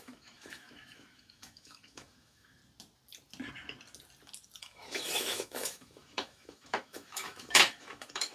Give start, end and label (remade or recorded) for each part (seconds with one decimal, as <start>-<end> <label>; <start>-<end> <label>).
0.0-2.6 remade; 2.6-4.6 recorded; 4.6-8.3 remade